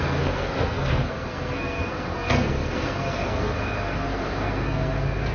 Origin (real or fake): fake